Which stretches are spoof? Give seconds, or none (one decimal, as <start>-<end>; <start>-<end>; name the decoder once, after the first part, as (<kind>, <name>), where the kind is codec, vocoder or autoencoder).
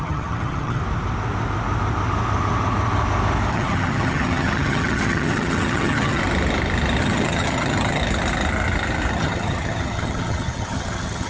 0.0-0.8 (vocoder, HiFi-GAN); 3.5-6.2; 7.0-8.0; 9.1-11.3